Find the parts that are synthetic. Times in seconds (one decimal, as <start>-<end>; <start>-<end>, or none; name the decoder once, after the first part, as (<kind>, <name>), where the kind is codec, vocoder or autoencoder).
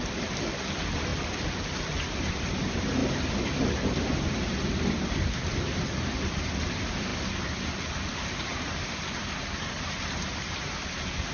0.0-1.1 (vocoder, BigVGAN v2); 2.4-3.0; 4.9-8.5; 10.8-11.3